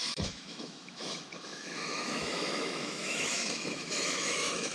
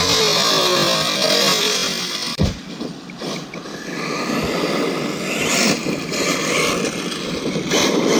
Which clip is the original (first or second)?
second